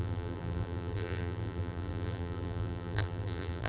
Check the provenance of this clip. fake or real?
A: fake